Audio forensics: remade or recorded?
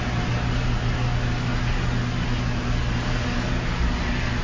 recorded